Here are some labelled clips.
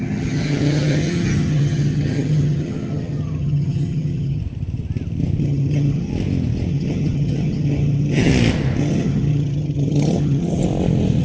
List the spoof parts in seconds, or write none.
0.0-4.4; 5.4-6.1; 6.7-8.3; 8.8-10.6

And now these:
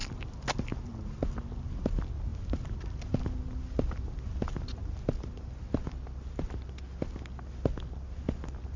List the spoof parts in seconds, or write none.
none

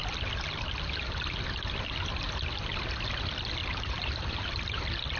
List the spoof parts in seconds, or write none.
3.6-4.4

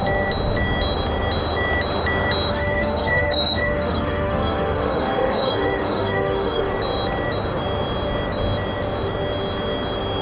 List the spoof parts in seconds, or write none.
2.5-6.7